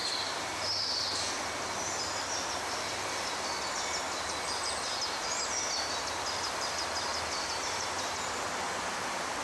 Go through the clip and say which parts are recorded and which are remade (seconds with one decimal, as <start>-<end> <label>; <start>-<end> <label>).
0.0-7.1 recorded; 7.1-8.5 remade; 8.5-9.4 recorded